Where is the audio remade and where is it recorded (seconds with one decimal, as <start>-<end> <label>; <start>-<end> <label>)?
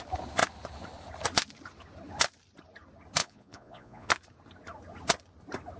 0.0-3.2 recorded; 3.2-4.1 remade; 4.1-5.8 recorded